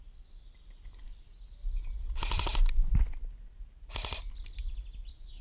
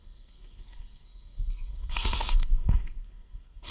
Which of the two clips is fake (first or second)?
second